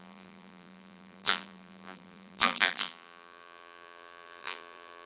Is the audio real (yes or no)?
no